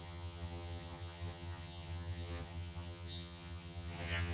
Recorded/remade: remade